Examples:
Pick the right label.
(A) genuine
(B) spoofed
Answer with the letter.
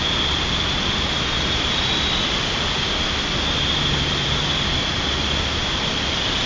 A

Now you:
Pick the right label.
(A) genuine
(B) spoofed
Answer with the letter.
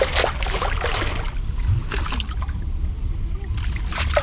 A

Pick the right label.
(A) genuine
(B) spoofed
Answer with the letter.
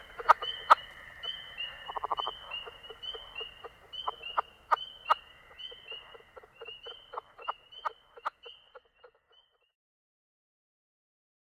A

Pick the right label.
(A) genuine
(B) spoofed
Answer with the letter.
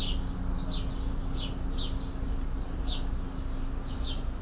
A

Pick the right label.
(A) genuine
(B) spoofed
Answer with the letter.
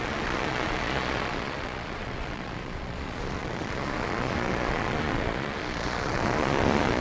B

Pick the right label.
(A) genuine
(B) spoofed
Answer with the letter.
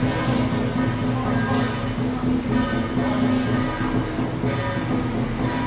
A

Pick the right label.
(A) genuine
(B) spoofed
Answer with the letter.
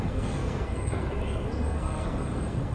B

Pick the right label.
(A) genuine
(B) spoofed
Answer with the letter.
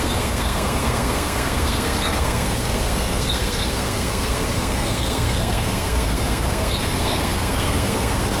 B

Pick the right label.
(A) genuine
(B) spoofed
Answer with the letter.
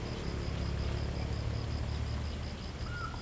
A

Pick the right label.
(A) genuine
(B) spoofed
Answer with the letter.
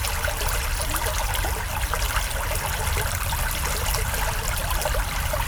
A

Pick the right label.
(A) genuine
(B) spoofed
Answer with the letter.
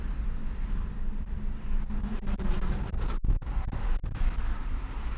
A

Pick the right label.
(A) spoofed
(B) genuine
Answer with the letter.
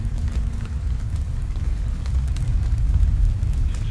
A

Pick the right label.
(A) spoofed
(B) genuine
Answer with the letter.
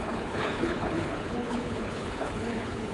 A